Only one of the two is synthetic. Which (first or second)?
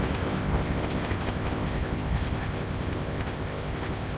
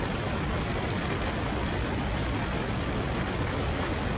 first